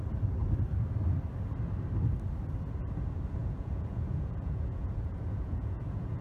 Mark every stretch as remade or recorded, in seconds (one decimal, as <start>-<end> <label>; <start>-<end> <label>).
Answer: 0.0-3.4 recorded; 3.4-6.2 remade